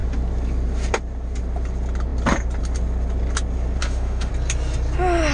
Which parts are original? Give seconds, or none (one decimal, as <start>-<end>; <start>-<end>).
0.0-3.8; 4.3-5.3